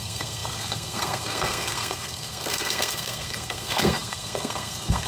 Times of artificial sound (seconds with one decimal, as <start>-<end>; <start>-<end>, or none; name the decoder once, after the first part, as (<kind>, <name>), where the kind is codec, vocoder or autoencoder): 0.0-5.1 (codec, SNAC)